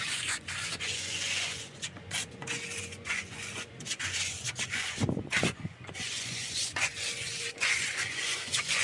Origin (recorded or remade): remade